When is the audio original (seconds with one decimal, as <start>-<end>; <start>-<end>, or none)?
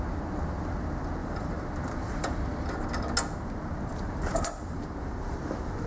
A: 0.0-1.2; 2.5-3.9; 5.4-5.9